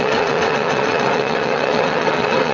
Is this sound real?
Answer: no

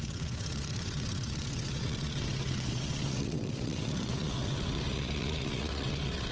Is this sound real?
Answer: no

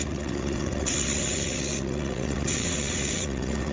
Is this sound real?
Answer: no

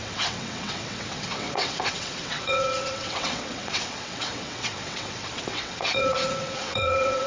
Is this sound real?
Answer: no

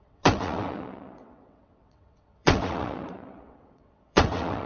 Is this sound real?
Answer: no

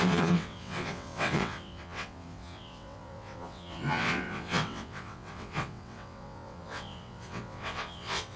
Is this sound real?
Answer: no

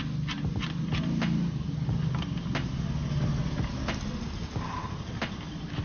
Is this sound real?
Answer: yes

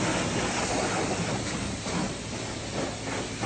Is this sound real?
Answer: yes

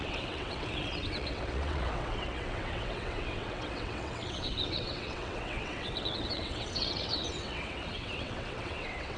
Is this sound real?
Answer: no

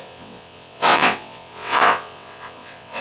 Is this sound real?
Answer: no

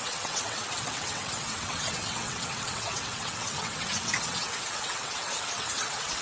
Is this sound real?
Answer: no